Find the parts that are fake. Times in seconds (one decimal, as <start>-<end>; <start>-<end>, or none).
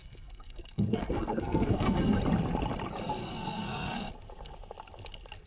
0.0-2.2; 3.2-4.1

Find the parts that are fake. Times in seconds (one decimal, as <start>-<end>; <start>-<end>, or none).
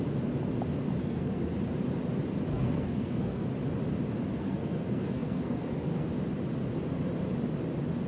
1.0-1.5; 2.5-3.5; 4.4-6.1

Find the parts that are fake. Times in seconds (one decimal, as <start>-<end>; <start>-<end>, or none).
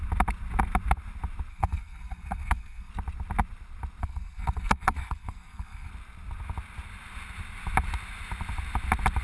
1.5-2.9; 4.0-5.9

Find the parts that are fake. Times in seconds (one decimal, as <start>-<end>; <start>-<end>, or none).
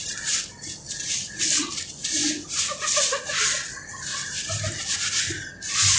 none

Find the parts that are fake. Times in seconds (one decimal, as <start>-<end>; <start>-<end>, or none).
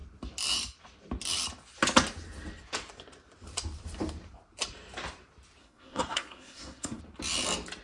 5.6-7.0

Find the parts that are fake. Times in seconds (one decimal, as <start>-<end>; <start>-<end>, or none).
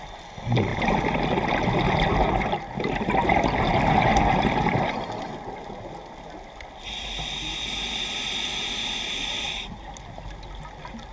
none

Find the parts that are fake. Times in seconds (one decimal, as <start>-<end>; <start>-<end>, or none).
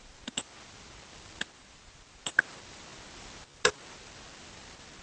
none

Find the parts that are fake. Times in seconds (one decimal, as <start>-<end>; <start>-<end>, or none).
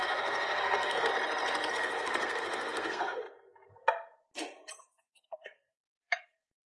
0.0-1.1; 1.7-3.2; 4.8-6.7